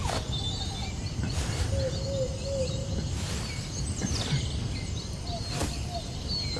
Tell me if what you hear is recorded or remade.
recorded